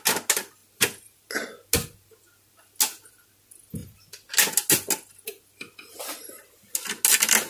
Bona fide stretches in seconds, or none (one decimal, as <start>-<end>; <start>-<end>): 0.0-7.5